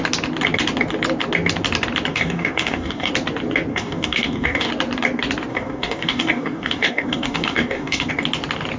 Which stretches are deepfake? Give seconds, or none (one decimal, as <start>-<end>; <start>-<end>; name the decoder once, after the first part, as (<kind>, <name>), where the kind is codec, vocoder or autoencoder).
2.1-3.1 (codec, DAC); 3.7-4.7; 5.5-8.1